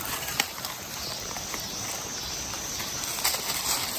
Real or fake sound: real